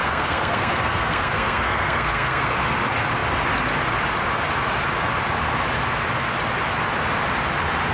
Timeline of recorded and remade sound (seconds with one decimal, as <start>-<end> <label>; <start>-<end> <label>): 0.0-2.5 remade; 2.5-7.9 recorded